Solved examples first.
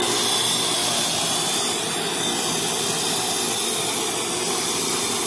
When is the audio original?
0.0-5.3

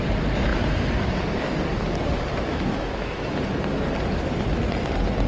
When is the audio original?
0.0-2.3; 3.3-5.3

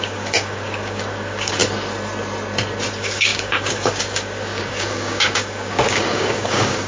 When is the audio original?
1.6-2.9